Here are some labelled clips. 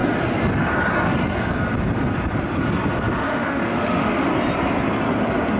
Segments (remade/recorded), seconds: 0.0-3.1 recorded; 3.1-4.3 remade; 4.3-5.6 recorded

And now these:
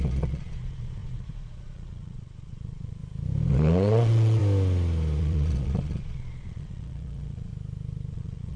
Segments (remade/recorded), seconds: 0.0-3.0 remade; 3.0-3.5 recorded; 3.5-4.4 remade; 4.4-5.2 recorded; 5.2-7.5 remade; 7.5-8.1 recorded; 8.1-8.6 remade

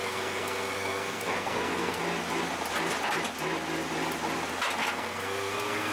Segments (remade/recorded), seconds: 0.0-2.0 remade; 2.0-4.8 recorded; 4.8-5.9 remade